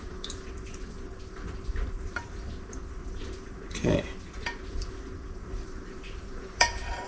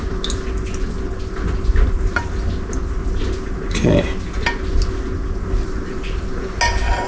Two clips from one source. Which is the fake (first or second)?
first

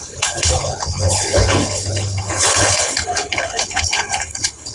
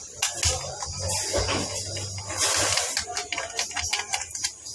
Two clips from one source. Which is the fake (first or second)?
first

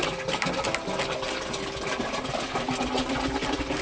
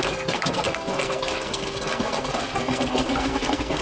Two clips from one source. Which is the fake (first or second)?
second